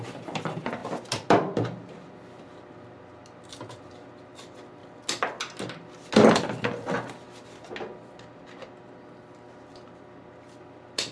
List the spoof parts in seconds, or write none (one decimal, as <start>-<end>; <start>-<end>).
none